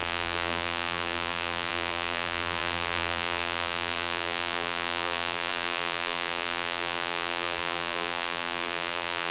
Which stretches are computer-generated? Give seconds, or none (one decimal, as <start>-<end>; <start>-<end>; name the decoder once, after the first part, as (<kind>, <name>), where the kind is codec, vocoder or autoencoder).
0.0-9.3 (vocoder, BigVGAN v2)